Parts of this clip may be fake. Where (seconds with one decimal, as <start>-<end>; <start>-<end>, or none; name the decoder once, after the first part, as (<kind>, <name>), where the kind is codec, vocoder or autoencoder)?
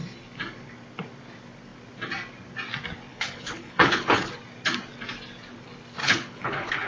3.1-4.3 (codec, HILCodec); 6.0-6.9